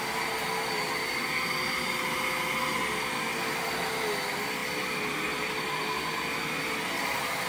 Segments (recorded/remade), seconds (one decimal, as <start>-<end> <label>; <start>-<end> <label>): 0.0-7.5 recorded